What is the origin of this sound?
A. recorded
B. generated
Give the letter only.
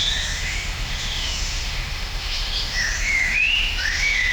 B